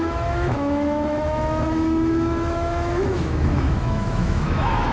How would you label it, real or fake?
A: fake